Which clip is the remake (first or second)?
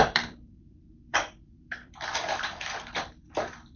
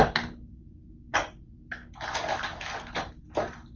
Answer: first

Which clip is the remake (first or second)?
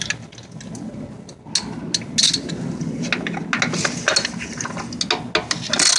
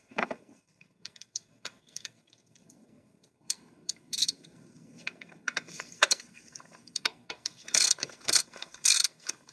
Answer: second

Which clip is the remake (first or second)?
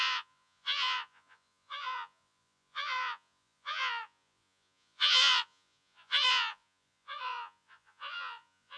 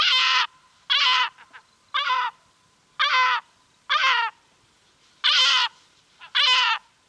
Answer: first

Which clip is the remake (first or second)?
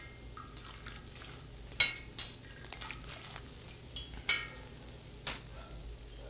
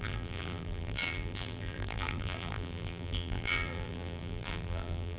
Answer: second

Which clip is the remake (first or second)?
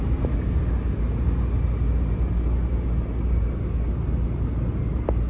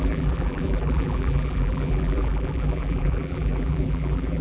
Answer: second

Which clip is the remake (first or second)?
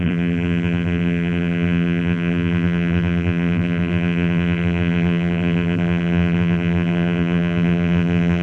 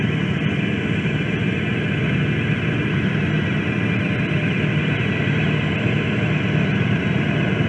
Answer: first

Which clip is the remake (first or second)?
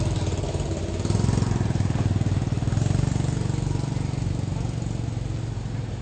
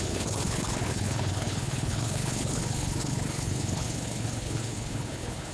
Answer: second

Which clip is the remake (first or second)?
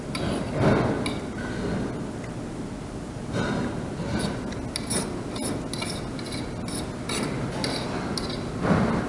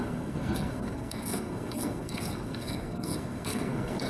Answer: second